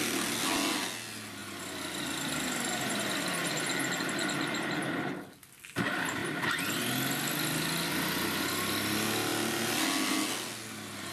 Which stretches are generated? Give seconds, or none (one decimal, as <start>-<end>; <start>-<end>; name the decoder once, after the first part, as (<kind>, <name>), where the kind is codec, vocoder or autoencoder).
none